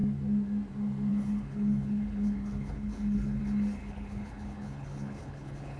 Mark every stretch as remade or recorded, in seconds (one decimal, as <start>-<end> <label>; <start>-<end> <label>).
0.0-1.1 recorded; 1.1-3.4 remade; 3.4-3.8 recorded; 3.8-5.8 remade